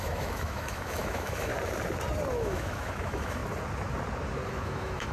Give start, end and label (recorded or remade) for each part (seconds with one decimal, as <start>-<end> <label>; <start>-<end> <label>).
0.0-1.5 remade; 1.5-2.3 recorded; 2.3-3.4 remade; 3.4-4.5 recorded; 4.5-5.1 remade